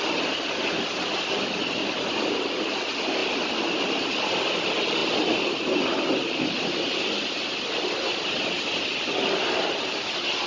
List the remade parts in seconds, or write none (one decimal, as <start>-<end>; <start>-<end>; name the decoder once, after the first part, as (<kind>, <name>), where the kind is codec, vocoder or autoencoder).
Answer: none